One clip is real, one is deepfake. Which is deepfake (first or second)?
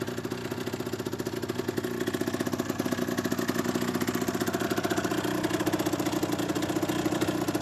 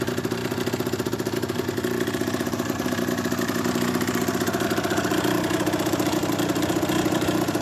second